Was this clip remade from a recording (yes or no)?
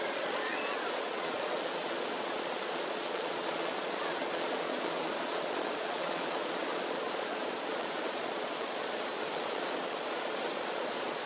yes